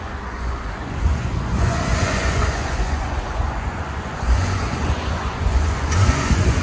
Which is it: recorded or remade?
remade